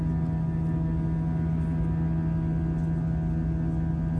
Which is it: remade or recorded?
recorded